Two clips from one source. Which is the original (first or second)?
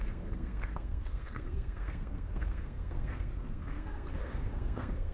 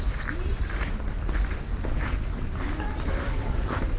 second